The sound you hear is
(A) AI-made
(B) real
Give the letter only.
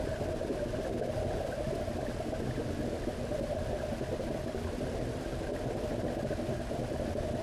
B